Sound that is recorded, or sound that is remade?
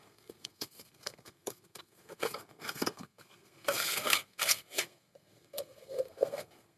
remade